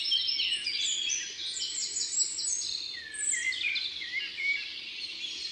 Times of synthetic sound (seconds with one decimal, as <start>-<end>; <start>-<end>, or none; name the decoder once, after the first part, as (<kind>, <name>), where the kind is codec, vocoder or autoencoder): none